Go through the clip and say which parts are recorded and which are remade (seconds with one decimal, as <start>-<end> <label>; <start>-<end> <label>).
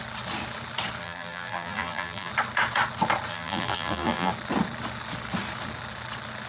0.0-1.0 recorded; 1.0-2.3 remade; 2.3-3.3 recorded; 3.3-4.3 remade; 4.3-6.5 recorded